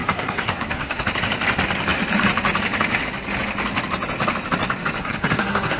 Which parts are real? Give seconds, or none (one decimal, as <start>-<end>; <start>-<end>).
1.0-5.0

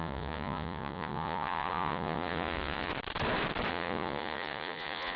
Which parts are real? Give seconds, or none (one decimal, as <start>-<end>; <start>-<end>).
2.9-3.7

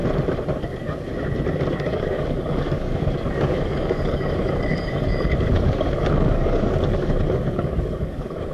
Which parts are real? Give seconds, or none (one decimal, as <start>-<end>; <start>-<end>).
0.0-0.5; 1.1-1.7

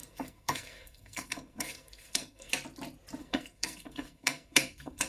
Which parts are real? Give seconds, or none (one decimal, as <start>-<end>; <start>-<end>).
2.5-3.2

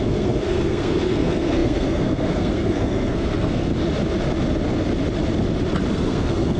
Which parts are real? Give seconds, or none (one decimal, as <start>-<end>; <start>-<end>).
3.7-5.9

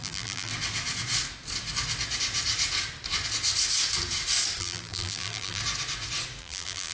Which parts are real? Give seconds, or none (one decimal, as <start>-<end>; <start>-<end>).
0.5-4.6; 5.6-6.4